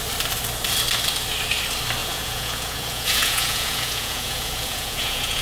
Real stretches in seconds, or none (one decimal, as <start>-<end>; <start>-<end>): 0.0-2.0